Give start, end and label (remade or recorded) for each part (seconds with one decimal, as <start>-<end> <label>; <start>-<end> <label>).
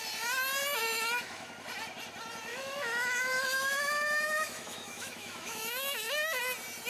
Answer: 0.0-0.7 recorded; 0.7-1.5 remade; 1.5-2.5 recorded; 2.5-6.4 remade; 6.4-6.9 recorded